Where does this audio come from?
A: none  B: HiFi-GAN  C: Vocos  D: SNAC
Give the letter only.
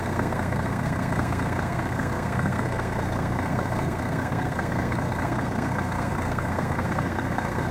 D